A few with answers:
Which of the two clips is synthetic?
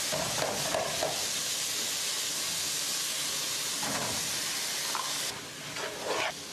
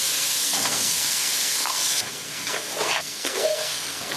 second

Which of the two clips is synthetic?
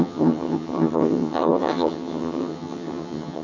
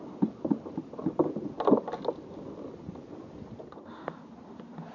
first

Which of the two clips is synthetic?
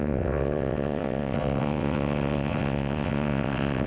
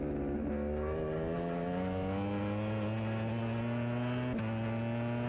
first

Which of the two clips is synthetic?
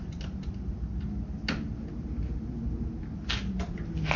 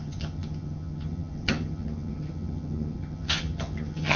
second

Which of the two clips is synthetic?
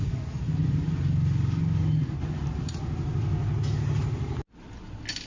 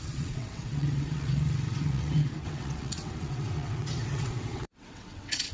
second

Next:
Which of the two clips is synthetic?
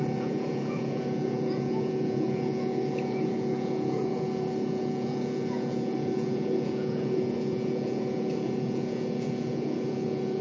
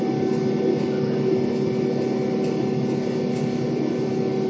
first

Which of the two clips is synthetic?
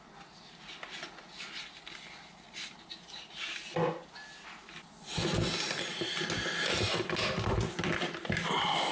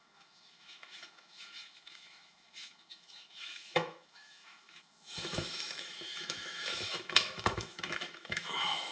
second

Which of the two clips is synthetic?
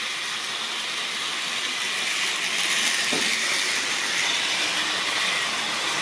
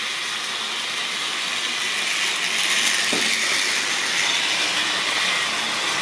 first